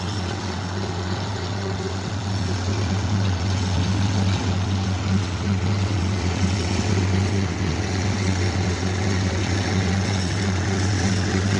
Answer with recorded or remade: remade